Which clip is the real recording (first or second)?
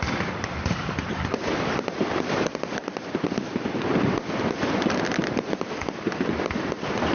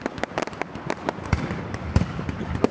second